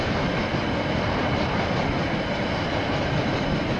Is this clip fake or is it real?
real